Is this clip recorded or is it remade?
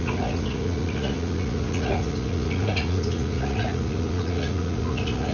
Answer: remade